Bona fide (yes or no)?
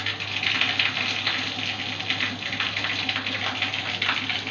yes